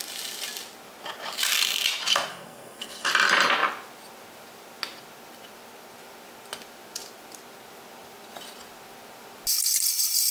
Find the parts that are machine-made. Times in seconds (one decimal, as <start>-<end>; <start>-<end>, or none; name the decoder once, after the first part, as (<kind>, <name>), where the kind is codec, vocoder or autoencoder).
2.3-3.1 (codec, SNAC)